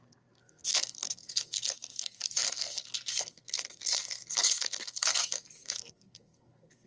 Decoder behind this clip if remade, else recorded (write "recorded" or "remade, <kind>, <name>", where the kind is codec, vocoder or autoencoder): remade, codec, SNAC